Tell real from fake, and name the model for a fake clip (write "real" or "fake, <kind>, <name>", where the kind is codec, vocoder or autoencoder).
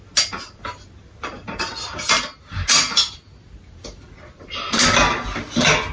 real